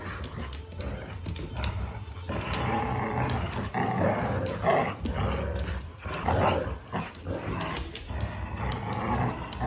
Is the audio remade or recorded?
recorded